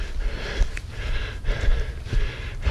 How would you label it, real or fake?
real